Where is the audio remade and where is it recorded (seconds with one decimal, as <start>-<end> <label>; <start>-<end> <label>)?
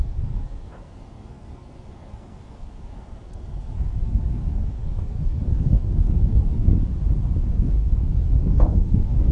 0.0-6.7 remade; 6.7-7.5 recorded; 7.5-9.3 remade